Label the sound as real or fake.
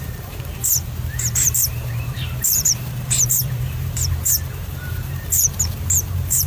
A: fake